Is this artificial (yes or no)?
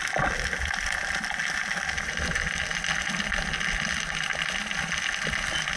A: no